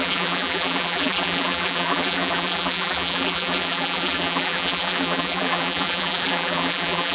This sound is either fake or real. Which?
fake